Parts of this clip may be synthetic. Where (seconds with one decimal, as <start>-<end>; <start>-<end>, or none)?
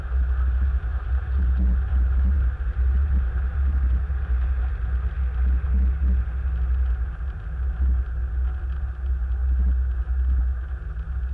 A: 0.9-4.7